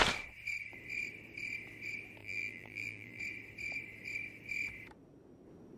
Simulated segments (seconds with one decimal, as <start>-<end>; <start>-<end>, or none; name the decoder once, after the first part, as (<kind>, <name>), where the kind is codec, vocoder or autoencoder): 2.2-3.2 (vocoder, BigVGAN v2)